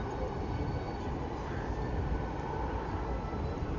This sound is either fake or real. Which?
fake